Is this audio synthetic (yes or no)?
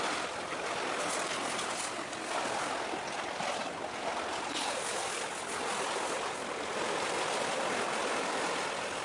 no